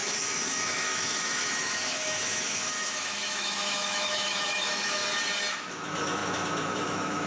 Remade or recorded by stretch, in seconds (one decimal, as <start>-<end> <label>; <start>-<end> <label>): 0.0-5.0 remade; 5.0-5.5 recorded; 5.5-7.3 remade